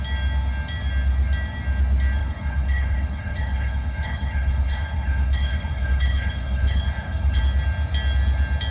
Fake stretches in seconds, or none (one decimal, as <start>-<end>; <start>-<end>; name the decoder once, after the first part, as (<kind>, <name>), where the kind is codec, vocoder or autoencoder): 2.2-7.4 (codec, HILCodec)